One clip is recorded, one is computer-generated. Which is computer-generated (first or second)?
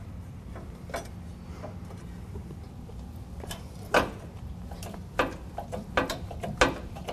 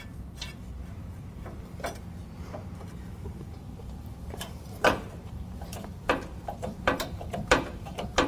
second